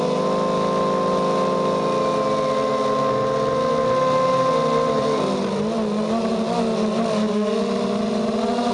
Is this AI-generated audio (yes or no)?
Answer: no